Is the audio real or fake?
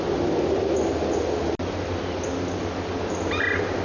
real